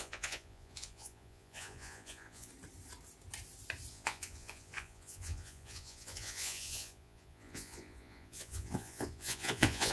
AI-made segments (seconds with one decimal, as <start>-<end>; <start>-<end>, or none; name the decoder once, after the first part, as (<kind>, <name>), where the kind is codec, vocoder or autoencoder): 0.0-2.5 (vocoder, Vocos); 3.9-9.9